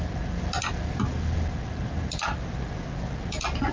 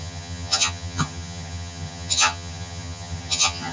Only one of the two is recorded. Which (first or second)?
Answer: first